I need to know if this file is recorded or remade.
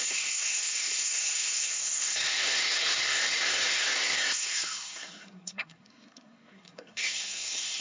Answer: remade